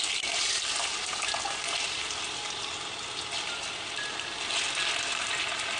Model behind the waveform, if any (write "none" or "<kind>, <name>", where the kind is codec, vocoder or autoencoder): none